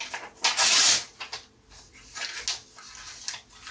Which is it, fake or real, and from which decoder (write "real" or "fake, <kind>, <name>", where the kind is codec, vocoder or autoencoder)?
real